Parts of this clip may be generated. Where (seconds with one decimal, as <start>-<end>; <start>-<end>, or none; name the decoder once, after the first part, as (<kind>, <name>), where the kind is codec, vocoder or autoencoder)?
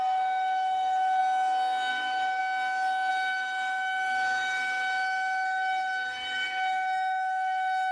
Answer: 0.0-1.2 (autoencoder, DAC-VAE); 1.9-2.4; 3.1-7.9